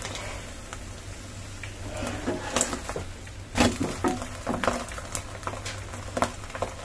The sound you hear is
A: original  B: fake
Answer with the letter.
A